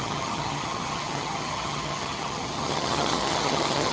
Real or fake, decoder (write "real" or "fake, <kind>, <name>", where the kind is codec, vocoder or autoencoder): fake, vocoder, HiFi-GAN